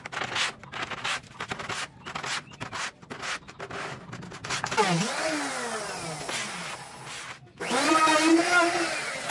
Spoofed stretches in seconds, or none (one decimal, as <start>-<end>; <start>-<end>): none